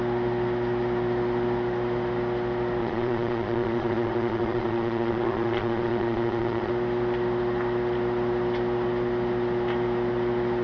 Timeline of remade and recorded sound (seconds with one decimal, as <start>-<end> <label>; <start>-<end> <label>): 0.0-2.8 recorded; 2.8-6.7 remade; 6.7-10.6 recorded